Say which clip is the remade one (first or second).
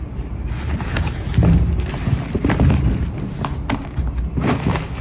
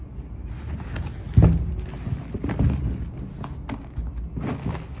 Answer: first